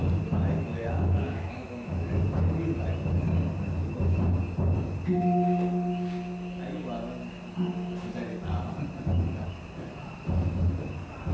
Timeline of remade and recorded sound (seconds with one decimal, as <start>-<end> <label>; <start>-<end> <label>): 0.0-0.7 recorded; 0.7-2.1 remade; 2.1-11.3 recorded